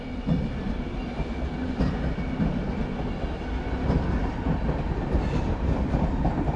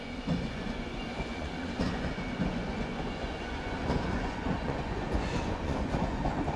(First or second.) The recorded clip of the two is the first